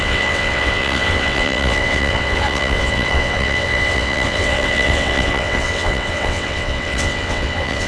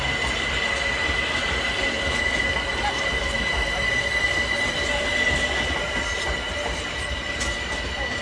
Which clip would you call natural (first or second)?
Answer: second